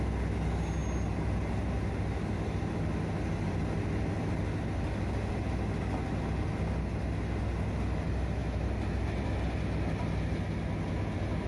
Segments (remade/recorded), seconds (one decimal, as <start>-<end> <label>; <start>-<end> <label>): 0.0-11.5 recorded